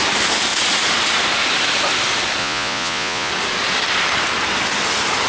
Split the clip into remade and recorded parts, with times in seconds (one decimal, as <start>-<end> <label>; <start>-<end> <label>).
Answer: 0.0-2.4 recorded; 2.4-3.3 remade; 3.3-5.3 recorded